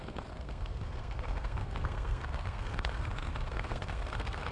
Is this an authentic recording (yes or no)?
no